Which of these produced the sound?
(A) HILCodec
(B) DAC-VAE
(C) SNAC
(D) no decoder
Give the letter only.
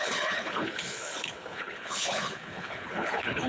A